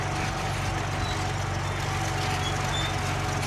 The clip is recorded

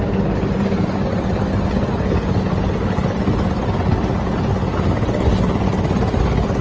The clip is recorded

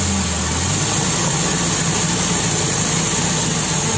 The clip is recorded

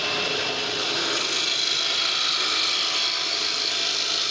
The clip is recorded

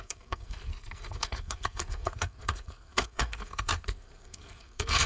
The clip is remade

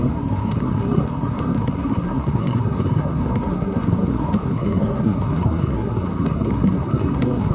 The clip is remade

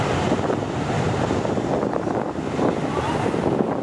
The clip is recorded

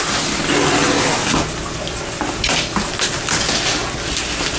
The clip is recorded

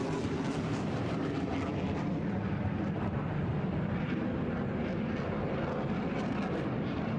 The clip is recorded